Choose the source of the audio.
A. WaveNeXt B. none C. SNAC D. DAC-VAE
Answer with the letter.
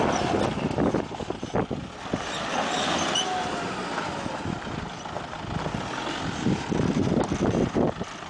B